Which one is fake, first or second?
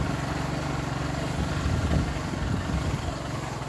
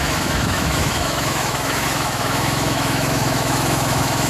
second